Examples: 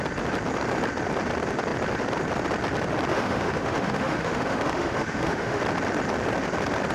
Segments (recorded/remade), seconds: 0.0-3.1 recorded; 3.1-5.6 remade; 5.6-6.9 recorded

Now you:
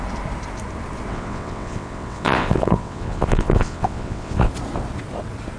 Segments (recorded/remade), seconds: 0.0-1.1 recorded; 1.1-4.5 remade; 4.5-5.6 recorded

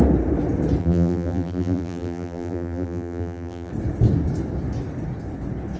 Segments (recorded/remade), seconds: 0.0-0.8 recorded; 0.8-3.7 remade; 3.7-5.8 recorded

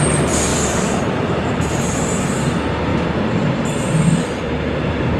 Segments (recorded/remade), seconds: 0.0-2.9 remade; 2.9-4.4 recorded; 4.4-5.2 remade

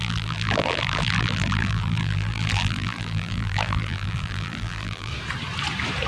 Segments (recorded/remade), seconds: 0.0-5.1 remade; 5.1-6.1 recorded